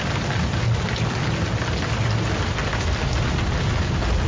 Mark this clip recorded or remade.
recorded